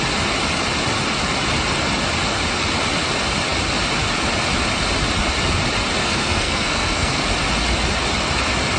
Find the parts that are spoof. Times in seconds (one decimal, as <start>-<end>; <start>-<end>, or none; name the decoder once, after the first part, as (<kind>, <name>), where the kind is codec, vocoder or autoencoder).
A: 6.0-7.2 (codec, SNAC)